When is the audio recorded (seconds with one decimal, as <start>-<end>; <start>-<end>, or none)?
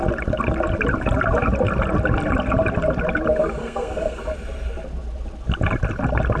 0.0-3.6; 4.2-6.4